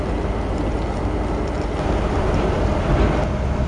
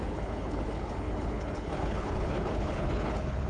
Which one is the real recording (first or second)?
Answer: first